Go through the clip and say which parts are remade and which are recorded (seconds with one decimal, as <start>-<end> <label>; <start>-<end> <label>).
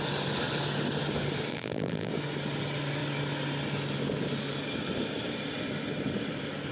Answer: 0.0-1.5 recorded; 1.5-2.1 remade; 2.1-6.7 recorded